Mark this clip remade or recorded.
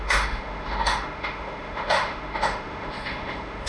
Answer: remade